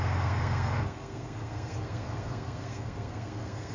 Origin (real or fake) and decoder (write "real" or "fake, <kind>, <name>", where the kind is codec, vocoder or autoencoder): fake, codec, SNAC